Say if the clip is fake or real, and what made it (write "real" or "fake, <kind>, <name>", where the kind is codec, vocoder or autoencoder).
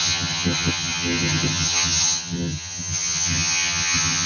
fake, vocoder, HiFi-GAN